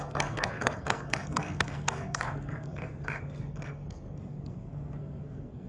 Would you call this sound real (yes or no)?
no